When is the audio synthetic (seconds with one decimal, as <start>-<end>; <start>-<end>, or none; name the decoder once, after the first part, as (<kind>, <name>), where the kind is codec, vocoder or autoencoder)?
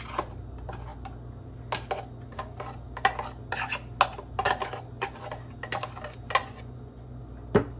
6.4-7.2 (vocoder, Vocos)